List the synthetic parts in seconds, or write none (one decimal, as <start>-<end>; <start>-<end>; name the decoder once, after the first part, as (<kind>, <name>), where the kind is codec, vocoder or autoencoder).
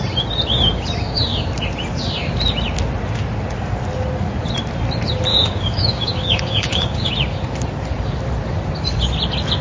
5.3-7.1 (codec, DAC)